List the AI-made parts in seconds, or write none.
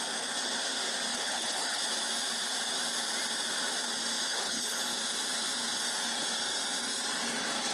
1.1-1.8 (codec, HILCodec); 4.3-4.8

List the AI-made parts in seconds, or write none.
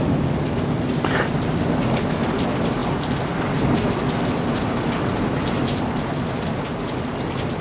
none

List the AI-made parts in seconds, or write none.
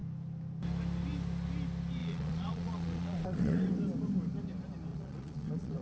2.0-3.7 (vocoder, Vocos); 4.9-5.8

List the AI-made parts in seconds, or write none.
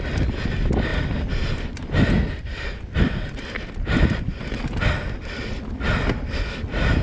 none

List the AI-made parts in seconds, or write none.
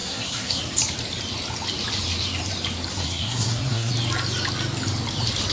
0.0-0.6 (codec, SNAC); 2.9-3.9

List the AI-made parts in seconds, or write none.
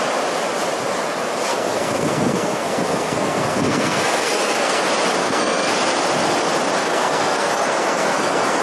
1.5-4.8 (codec, SNAC); 5.2-5.7; 6.8-8.6